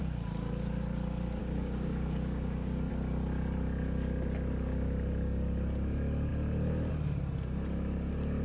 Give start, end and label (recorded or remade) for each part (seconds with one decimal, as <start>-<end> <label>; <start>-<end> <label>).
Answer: 0.0-1.4 recorded; 1.4-2.9 remade; 2.9-8.4 recorded